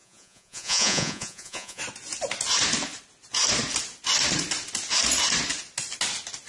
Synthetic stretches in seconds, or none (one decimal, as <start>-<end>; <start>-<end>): 0.0-1.8